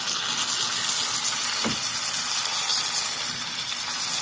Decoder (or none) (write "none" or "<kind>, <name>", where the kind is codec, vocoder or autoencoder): none